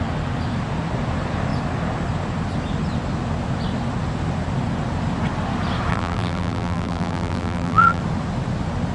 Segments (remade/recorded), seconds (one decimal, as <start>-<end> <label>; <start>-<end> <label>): 0.0-5.9 recorded; 5.9-8.0 remade; 8.0-8.9 recorded